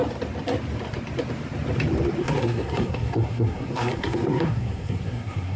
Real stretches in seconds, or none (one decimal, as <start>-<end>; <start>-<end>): 0.0-2.2